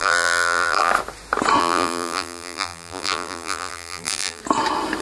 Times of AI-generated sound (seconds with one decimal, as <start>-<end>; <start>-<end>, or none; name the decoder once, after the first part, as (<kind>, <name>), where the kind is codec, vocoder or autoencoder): 0.0-0.9 (vocoder, BigVGAN v2); 1.6-4.4